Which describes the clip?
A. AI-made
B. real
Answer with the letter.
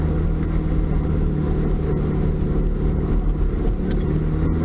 B